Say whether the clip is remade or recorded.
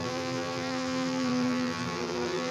remade